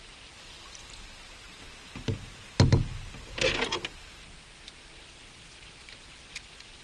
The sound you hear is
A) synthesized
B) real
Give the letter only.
B